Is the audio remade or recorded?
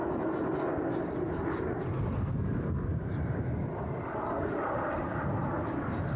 recorded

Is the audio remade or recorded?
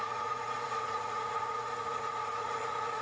remade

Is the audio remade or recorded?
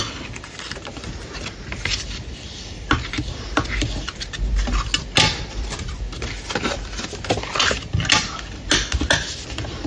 recorded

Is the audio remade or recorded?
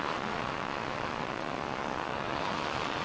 remade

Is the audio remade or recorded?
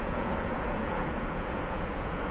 remade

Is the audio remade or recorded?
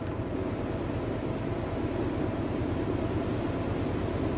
recorded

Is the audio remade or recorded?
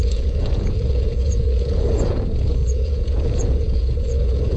remade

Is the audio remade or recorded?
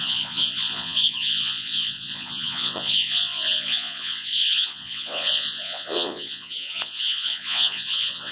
remade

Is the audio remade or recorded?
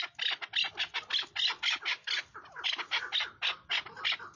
recorded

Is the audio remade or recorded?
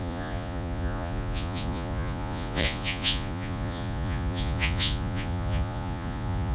remade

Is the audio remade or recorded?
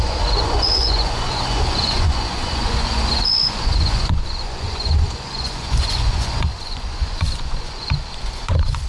remade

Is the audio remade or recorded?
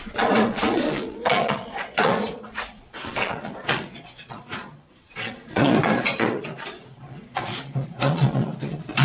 remade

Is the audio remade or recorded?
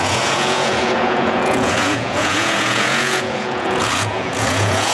remade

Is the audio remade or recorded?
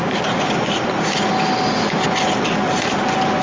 recorded